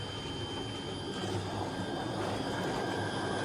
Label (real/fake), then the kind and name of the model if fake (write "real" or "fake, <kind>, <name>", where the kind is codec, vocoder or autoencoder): real